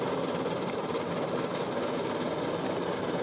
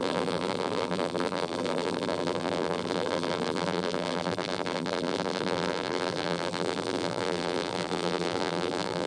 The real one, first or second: first